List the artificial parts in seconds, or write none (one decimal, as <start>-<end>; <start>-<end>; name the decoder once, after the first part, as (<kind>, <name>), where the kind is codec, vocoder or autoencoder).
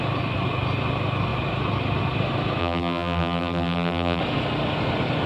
2.6-4.2 (vocoder, BigVGAN v2)